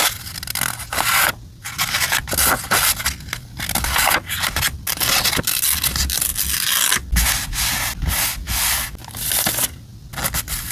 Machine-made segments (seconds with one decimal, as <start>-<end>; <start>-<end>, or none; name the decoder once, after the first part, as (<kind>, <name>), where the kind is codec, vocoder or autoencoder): none